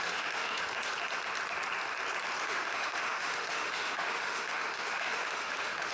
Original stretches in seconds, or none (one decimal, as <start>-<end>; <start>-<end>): 0.6-2.4